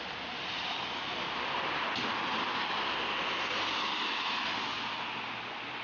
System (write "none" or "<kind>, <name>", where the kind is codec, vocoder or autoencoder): none